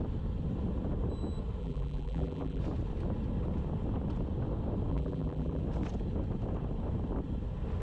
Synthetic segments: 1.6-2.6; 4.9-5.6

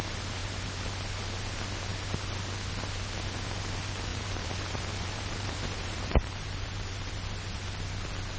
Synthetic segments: 0.4-1.0; 4.1-7.1

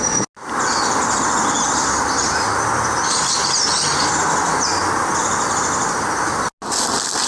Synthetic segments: 2.5-4.9